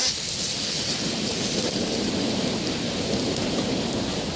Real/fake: real